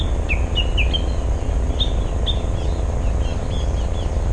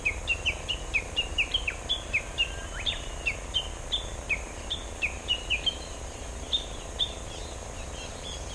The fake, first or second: second